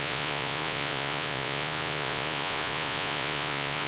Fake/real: fake